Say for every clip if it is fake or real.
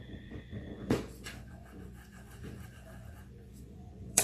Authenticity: fake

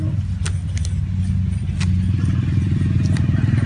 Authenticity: real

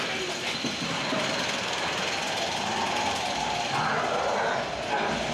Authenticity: real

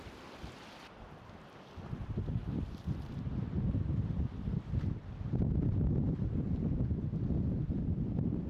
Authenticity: fake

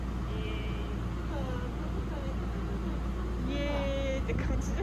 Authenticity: real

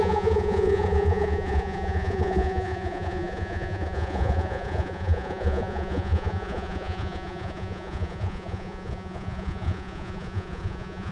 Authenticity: fake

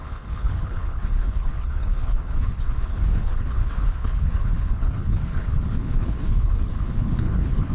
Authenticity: fake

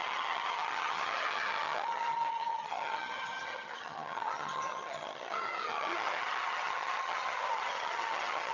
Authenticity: fake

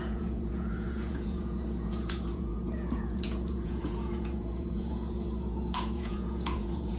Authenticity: fake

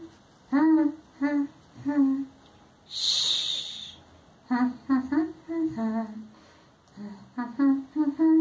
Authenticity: real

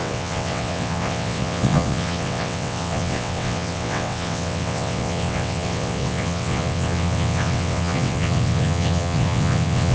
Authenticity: fake